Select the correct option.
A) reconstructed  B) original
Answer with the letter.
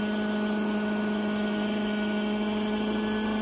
B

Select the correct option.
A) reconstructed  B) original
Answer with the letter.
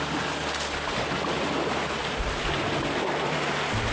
B